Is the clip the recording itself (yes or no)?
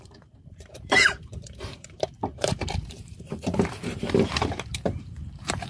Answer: no